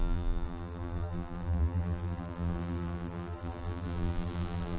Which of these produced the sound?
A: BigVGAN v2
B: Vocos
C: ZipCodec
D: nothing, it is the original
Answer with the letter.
A